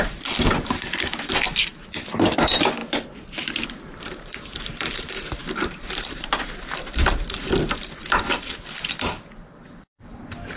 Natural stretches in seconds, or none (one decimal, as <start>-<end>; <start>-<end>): 2.8-4.0